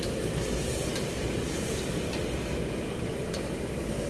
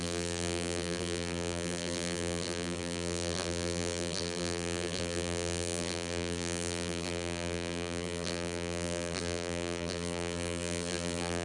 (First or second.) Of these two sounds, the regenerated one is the second